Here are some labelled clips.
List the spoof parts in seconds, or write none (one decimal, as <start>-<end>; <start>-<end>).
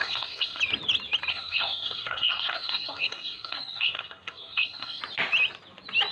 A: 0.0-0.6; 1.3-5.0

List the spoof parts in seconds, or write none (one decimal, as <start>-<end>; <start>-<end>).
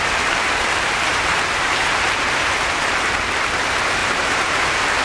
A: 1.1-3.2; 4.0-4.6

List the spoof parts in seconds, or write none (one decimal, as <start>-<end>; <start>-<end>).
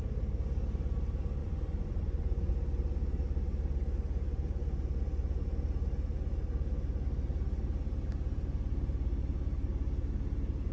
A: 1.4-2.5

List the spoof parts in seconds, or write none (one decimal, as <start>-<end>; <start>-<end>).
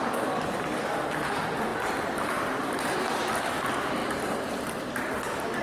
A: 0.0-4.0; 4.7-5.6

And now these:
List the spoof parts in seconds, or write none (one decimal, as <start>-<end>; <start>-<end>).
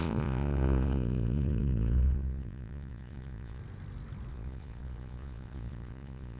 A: 0.0-3.6; 4.3-6.4